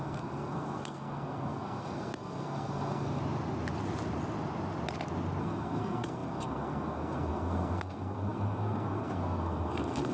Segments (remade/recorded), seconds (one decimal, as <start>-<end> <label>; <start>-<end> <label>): 0.0-3.2 remade; 3.2-5.4 recorded; 5.4-10.1 remade